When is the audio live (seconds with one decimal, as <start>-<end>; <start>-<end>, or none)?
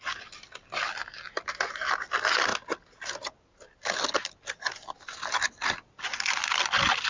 0.0-7.1